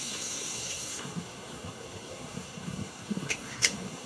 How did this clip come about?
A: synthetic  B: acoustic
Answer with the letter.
A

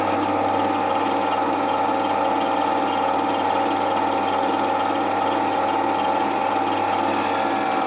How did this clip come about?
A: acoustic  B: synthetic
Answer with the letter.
A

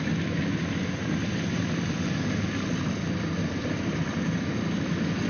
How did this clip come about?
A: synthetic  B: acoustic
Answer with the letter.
B